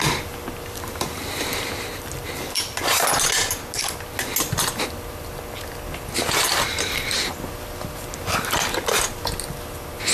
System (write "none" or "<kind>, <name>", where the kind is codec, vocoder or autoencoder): none